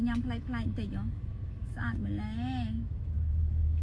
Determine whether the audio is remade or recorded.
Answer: remade